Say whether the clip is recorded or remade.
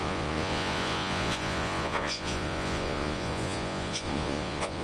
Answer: remade